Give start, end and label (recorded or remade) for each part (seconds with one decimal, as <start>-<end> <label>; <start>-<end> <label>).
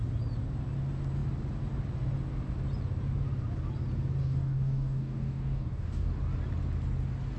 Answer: 0.0-4.2 recorded; 4.2-6.1 remade; 6.1-7.4 recorded